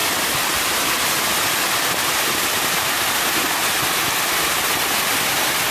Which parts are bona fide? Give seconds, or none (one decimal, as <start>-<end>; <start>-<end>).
0.0-5.7